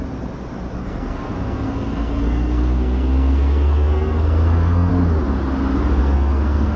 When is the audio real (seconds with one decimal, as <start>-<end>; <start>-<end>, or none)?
0.0-0.8; 4.9-6.0